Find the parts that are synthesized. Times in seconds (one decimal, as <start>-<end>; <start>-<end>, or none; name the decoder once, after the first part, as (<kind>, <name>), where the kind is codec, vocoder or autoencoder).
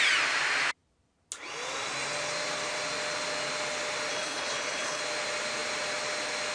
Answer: 4.1-5.0 (codec, HILCodec)